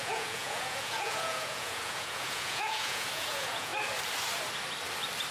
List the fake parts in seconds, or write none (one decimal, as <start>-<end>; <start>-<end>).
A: 0.0-3.7